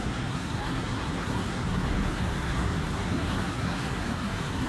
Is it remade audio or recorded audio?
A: remade